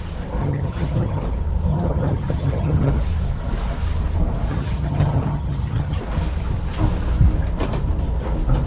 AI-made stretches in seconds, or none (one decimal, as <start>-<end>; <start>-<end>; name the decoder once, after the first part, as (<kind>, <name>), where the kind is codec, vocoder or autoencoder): 0.4-1.2 (vocoder, HiFi-GAN); 1.7-2.9; 4.5-6.0